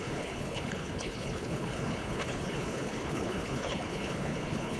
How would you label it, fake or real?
fake